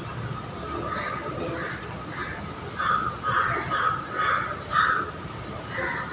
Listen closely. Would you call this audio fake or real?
real